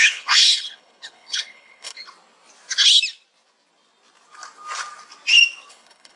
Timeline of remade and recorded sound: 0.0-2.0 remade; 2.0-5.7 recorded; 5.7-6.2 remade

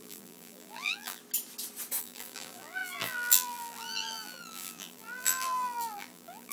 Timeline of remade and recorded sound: 0.0-1.2 remade; 1.2-2.0 recorded; 2.0-6.5 remade

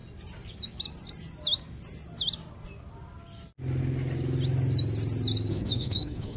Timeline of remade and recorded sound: 0.0-5.5 recorded; 5.5-6.4 remade

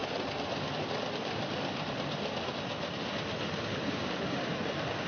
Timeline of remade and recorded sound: 0.0-5.1 recorded

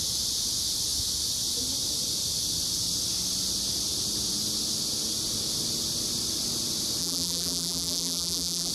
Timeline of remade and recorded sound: 0.0-7.0 recorded; 7.0-8.7 remade